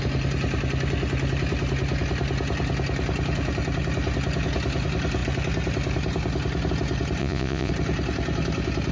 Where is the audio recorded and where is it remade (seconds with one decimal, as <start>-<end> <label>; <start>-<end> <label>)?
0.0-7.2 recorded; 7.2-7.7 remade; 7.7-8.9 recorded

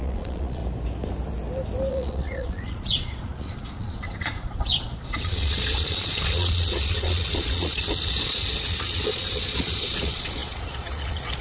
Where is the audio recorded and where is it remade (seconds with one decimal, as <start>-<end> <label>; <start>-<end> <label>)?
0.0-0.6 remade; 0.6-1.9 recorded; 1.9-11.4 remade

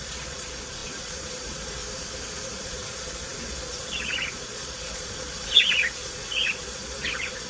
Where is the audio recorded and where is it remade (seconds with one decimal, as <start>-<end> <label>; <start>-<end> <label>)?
0.0-1.8 remade; 1.8-2.5 recorded; 2.5-7.5 remade